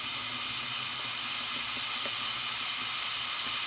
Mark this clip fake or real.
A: real